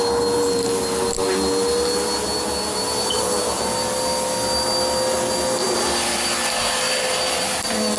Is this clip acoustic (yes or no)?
yes